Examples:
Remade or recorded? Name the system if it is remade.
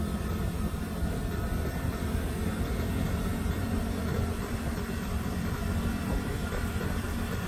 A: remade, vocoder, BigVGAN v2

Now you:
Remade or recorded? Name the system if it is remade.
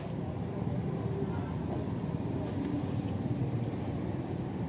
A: recorded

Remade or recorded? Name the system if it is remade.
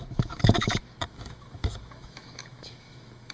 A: remade, autoencoder, DAC-VAE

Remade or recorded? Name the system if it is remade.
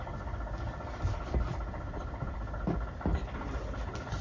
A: recorded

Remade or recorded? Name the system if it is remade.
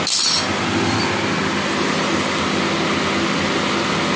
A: recorded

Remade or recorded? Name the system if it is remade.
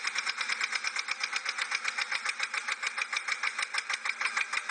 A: recorded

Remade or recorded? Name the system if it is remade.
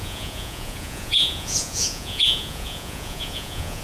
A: remade, vocoder, Vocos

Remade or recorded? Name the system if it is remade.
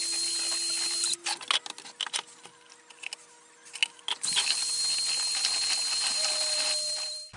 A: recorded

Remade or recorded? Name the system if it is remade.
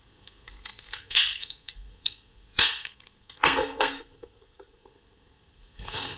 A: remade, codec, SNAC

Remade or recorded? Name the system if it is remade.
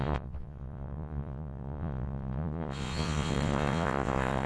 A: remade, vocoder, Vocos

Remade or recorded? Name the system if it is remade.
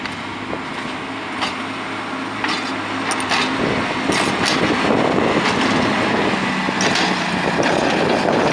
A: recorded